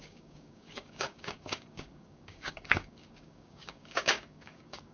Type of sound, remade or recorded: remade